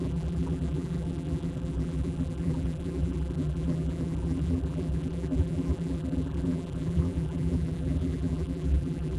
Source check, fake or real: fake